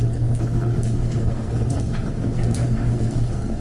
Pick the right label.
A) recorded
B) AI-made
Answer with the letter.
B